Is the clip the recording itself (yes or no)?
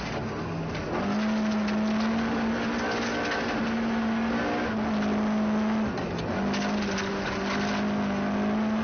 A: yes